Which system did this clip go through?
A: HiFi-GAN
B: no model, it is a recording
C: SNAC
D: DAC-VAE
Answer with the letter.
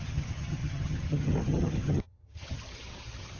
A